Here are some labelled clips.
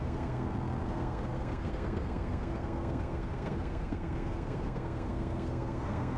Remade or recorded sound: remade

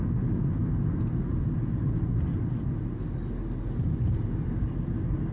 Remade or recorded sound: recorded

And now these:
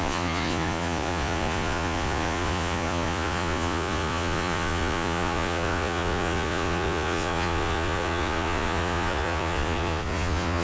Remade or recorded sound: remade